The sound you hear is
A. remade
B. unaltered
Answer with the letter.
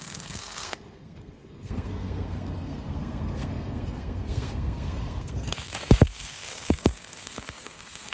A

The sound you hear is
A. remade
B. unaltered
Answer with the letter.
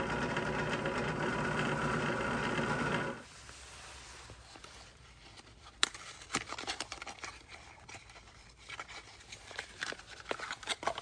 B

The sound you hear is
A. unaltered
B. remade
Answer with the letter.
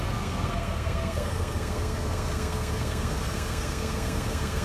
B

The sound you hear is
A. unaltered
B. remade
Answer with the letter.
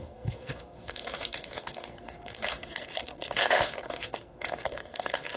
B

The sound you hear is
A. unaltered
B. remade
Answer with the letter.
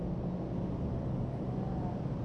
A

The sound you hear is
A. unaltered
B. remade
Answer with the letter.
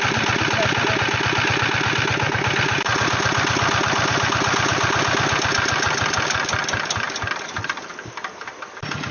A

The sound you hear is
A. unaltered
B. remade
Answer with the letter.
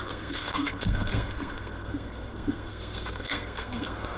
B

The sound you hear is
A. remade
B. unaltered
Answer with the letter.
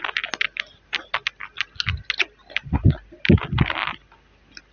B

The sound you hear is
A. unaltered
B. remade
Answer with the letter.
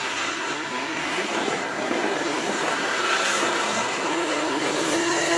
B